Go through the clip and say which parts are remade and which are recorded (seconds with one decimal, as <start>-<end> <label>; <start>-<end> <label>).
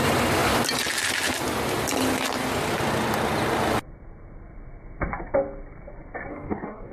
0.0-6.3 recorded; 6.3-6.9 remade